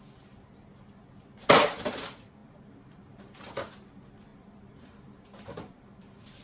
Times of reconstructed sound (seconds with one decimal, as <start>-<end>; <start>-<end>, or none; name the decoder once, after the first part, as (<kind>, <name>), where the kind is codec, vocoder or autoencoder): 2.4-3.5 (vocoder, BigVGAN v2); 4.3-6.4